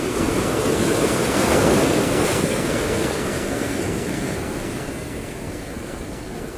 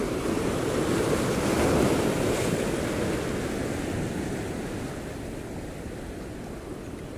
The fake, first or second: first